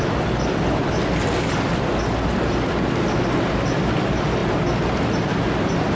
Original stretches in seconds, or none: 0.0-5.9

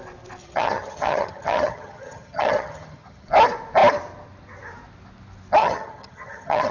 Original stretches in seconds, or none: 0.0-0.4; 3.3-5.6

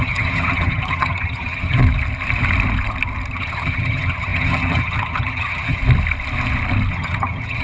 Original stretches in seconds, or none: 1.8-3.3; 5.8-6.9

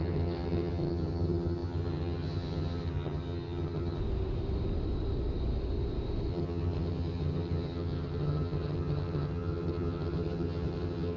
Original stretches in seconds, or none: 4.0-6.3

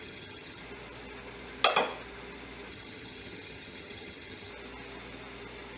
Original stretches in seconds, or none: 0.6-2.7; 4.5-5.8

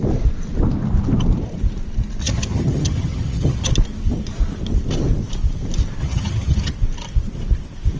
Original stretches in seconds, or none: 0.0-2.2; 3.7-6.0; 6.7-8.0

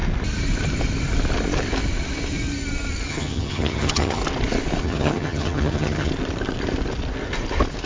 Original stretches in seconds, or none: 0.0-3.1; 4.2-4.8; 6.1-7.9